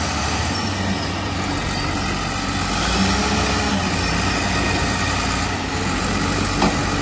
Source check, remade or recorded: recorded